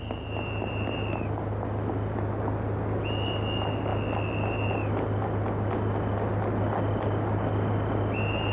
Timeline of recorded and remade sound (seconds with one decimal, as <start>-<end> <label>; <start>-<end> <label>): 0.0-8.5 recorded